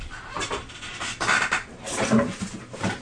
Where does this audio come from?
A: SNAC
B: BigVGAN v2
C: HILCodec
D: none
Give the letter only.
D